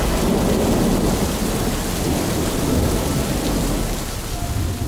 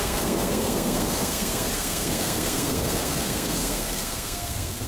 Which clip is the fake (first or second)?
second